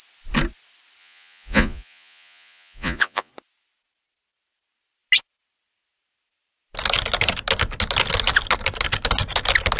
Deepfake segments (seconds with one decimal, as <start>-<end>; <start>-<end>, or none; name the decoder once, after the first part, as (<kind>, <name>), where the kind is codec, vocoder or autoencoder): 1.0-3.3 (vocoder, Vocos)